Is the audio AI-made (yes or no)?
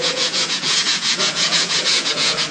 yes